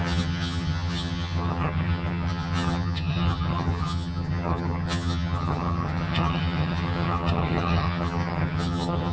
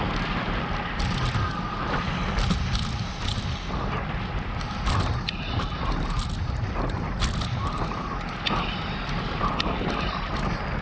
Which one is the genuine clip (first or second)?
second